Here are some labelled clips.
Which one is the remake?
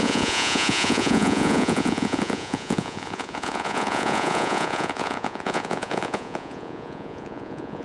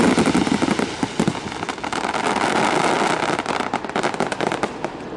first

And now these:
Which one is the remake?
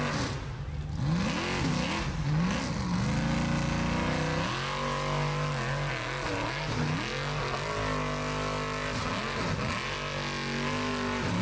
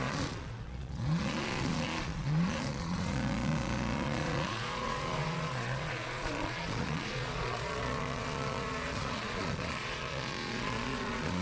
second